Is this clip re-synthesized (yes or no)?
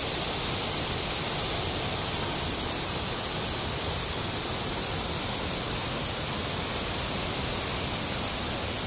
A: no